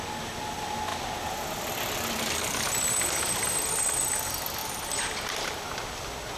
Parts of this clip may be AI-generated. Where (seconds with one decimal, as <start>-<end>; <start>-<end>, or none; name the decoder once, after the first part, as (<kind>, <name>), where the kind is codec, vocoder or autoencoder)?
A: 0.9-2.3 (vocoder, BigVGAN v2); 4.6-5.9